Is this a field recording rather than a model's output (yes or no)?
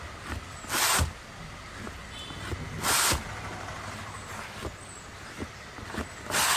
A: yes